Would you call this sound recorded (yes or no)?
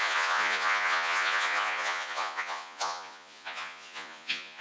no